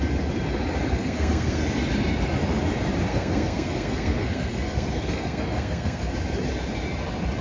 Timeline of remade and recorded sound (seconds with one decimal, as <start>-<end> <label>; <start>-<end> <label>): 0.0-0.9 recorded; 0.9-1.6 remade; 1.6-3.1 recorded; 3.1-6.1 remade; 6.1-7.4 recorded

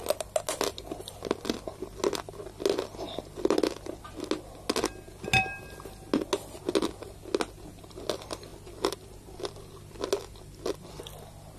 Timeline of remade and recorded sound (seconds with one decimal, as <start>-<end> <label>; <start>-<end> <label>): 0.0-11.6 recorded

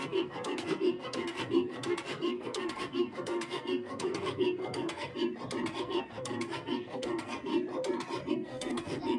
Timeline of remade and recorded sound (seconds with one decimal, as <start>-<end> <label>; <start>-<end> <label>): 0.0-5.1 remade; 5.1-5.8 recorded; 5.8-7.5 remade; 7.5-8.3 recorded; 8.3-9.2 remade

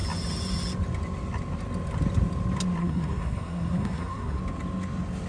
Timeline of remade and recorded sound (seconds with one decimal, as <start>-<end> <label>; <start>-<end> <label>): 0.0-2.8 recorded; 2.8-4.4 remade; 4.4-5.3 recorded

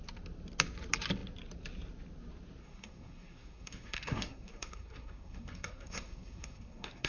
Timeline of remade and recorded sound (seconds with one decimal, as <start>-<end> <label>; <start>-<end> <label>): 0.0-2.6 recorded; 2.6-7.1 remade

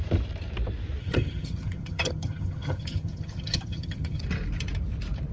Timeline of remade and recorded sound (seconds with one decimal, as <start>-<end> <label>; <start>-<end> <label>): 0.0-1.0 recorded; 1.0-4.2 remade; 4.2-5.3 recorded

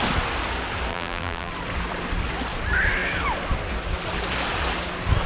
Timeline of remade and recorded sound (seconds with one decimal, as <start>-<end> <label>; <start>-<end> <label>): 0.0-0.9 recorded; 0.9-1.5 remade; 1.5-5.3 recorded

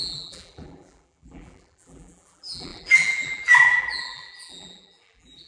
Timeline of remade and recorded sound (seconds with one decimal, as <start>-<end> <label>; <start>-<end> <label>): 0.0-5.5 remade